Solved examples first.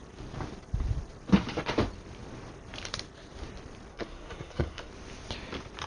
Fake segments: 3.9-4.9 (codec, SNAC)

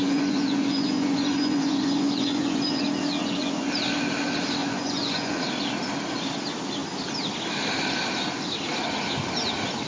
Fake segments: 0.0-2.8 (vocoder, Vocos); 3.2-3.7; 4.6-5.4